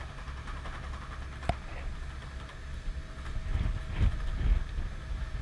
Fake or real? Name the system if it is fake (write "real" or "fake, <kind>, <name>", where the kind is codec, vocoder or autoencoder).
real